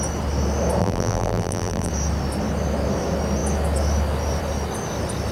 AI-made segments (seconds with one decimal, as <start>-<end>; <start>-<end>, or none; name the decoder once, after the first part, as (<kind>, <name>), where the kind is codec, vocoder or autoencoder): 0.8-1.9 (vocoder, BigVGAN v2)